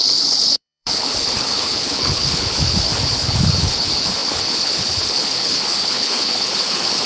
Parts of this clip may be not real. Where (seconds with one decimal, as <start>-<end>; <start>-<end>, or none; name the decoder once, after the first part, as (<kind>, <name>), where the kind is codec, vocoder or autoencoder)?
0.0-7.1 (codec, HILCodec)